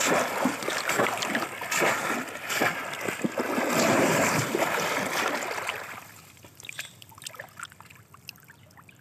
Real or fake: real